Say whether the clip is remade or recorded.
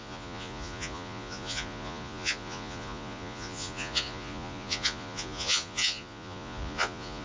remade